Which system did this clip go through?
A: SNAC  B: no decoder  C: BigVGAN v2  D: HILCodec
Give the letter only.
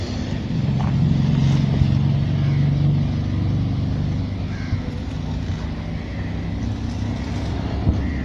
B